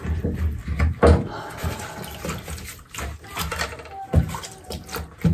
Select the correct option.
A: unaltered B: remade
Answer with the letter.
A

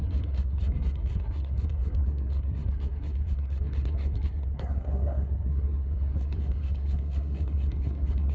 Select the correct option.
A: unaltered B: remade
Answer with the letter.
B